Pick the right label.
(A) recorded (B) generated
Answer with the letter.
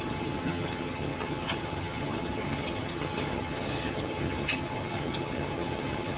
B